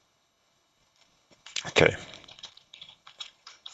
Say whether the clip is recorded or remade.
remade